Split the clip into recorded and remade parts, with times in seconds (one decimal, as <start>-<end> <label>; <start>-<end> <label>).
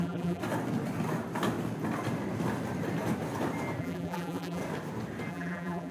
0.0-0.4 remade; 0.4-3.8 recorded; 3.8-4.6 remade; 4.6-5.3 recorded; 5.3-5.9 remade